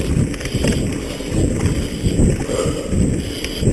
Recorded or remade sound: recorded